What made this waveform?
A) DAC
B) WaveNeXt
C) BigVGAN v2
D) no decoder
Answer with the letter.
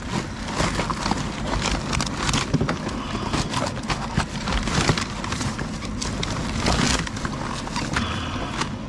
D